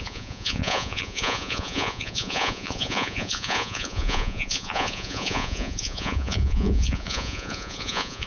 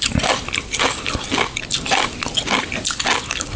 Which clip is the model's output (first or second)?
first